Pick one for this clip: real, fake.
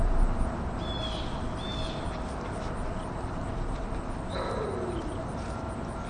real